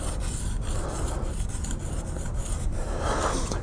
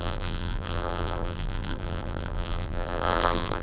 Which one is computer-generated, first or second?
second